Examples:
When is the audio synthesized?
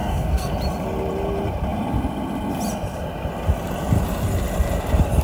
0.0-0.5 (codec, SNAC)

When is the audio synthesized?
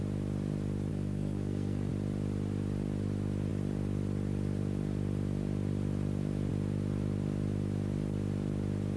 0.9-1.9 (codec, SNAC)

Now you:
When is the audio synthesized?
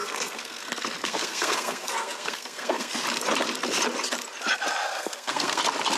0.0-0.6 (codec, SNAC); 1.0-2.9; 4.8-5.6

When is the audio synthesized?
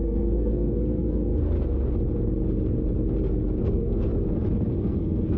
0.0-1.3 (codec, SNAC); 3.6-4.1; 4.7-5.4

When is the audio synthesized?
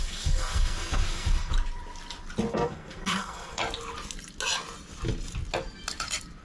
0.0-1.5 (codec, SNAC); 2.5-3.6